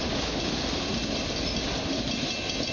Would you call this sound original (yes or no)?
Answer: yes